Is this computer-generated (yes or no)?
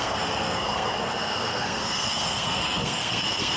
yes